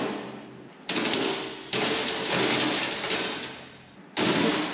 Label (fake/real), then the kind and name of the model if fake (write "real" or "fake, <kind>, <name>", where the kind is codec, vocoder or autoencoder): real